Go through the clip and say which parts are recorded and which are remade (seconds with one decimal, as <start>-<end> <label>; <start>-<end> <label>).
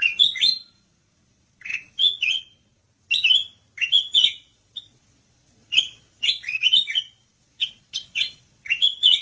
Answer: 0.0-2.8 remade; 2.8-3.8 recorded; 3.8-9.2 remade